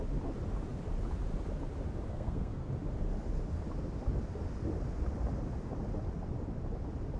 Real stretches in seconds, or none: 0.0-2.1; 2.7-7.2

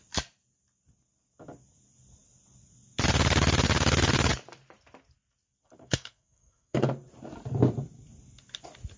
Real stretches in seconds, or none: 0.0-5.8; 6.8-9.0